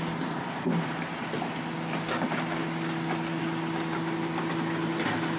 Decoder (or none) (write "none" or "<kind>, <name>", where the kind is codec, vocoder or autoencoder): none